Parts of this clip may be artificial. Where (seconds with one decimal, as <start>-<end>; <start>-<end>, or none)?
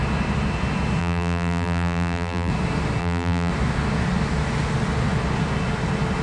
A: 1.0-2.5; 3.0-3.5